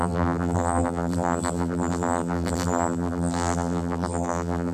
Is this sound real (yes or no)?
no